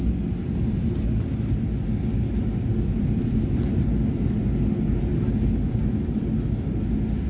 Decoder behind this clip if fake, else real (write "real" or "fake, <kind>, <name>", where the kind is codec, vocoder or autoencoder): real